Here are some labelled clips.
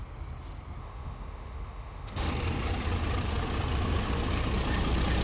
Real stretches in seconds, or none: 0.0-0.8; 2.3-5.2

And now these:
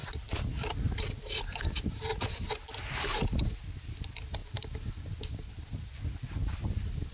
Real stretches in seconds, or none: 0.0-7.1

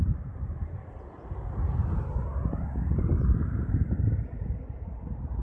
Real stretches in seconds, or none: none

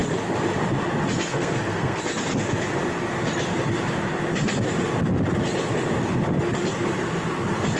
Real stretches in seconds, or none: 0.0-1.3; 2.0-7.8